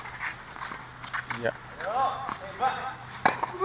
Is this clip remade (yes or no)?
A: no